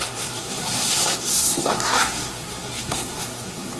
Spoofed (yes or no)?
yes